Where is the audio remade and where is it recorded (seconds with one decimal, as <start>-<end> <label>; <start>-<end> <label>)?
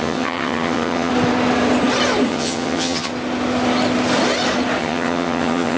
0.0-1.1 remade; 1.1-2.3 recorded; 2.3-3.1 remade; 3.1-4.8 recorded; 4.8-5.8 remade